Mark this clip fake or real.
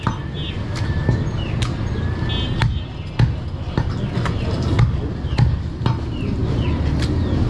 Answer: real